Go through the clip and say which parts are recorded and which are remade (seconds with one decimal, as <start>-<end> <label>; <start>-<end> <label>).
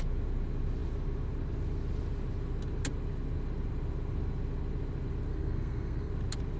0.0-5.3 recorded; 5.3-6.1 remade; 6.1-6.6 recorded